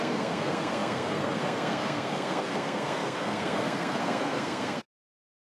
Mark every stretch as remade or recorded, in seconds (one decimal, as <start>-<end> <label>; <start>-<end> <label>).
0.0-5.6 remade